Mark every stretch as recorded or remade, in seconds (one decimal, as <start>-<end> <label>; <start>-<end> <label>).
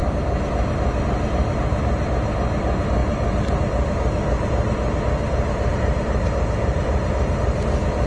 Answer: 0.0-8.1 recorded